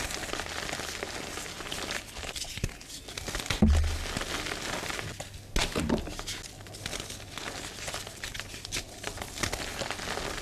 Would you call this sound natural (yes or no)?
yes